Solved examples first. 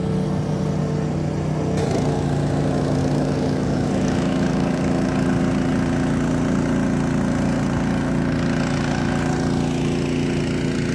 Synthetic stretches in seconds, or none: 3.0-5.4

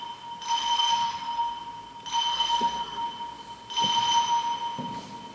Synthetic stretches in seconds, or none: 0.6-1.4; 2.3-3.0

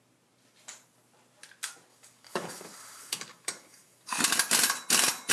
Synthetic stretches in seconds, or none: 1.9-4.2

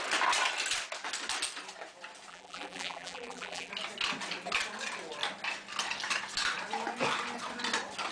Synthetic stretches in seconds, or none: 2.3-3.7

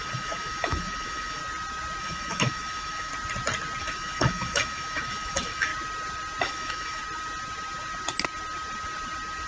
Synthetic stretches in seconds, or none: 0.0-1.4; 2.0-3.1; 3.8-5.7; 6.4-7.0

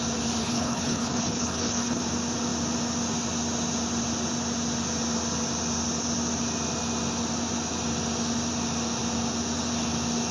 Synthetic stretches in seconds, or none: 0.4-2.0

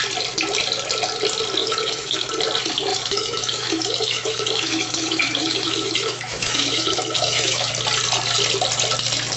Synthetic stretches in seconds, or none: 1.6-2.3; 2.9-7.7

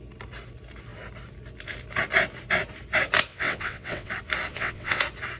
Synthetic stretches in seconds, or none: 3.3-4.1; 4.5-5.0